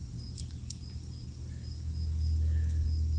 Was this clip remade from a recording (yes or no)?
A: no